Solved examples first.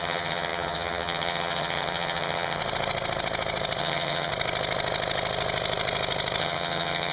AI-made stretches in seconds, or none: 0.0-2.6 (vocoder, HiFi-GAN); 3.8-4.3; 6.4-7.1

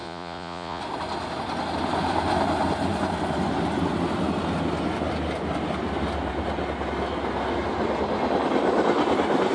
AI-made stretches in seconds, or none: 0.0-0.8 (vocoder, Vocos)

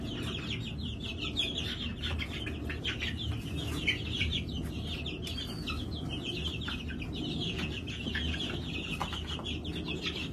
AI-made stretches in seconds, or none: 7.4-8.0 (vocoder, Vocos)

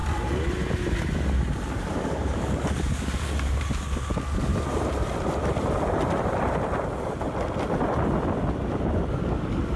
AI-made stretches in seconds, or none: 1.7-4.5 (codec, DAC); 9.1-9.8

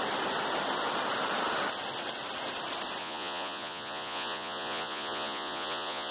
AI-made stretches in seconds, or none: 3.0-6.1 (vocoder, Vocos)